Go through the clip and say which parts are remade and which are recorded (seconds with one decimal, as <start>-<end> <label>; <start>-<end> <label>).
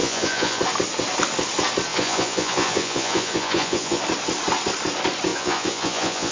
0.0-0.6 remade; 0.6-1.9 recorded; 1.9-4.0 remade; 4.0-5.3 recorded; 5.3-6.3 remade